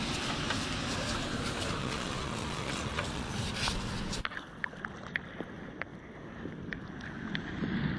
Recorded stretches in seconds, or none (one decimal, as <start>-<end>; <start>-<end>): 0.0-1.8; 3.3-8.0